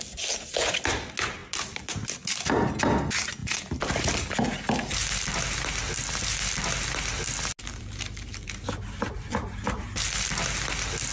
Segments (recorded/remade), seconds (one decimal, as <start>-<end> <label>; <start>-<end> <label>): 0.0-11.1 recorded